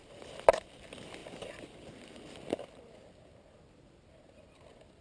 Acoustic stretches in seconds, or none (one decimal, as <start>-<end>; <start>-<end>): 0.0-5.0